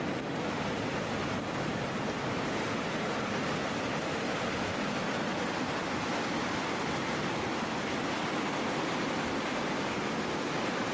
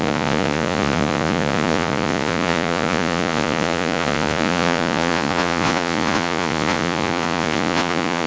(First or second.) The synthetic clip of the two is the second